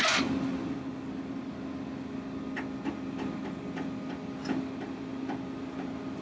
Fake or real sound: real